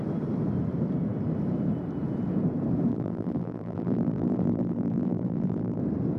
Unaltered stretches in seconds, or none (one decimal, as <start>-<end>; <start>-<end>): 0.0-2.9; 5.8-6.2

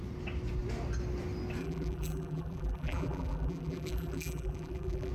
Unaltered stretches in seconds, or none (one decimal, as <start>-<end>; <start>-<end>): 0.0-1.6

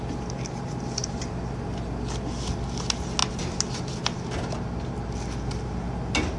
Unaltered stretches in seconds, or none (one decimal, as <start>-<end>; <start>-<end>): 0.0-6.4

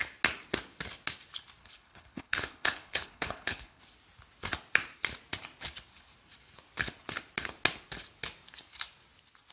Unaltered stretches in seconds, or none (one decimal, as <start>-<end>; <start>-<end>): 0.0-1.6; 3.8-9.5

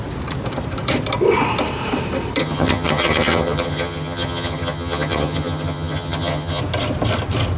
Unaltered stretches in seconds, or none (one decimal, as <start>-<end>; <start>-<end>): 0.0-2.4; 6.6-7.6

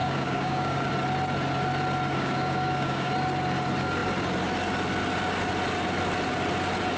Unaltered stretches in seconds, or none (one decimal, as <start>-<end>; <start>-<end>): 0.9-2.1; 3.1-7.0

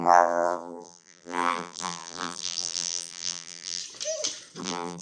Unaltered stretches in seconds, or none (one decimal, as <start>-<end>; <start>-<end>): 3.8-4.6

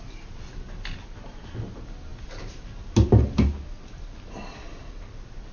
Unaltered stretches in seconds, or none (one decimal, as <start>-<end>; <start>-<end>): 0.0-5.5